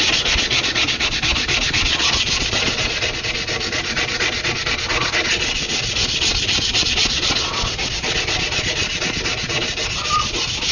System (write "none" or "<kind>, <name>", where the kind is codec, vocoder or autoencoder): vocoder, Vocos